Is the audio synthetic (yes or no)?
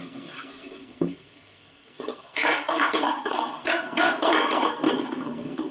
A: yes